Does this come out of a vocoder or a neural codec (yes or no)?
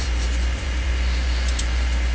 yes